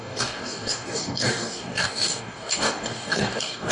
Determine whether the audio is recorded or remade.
remade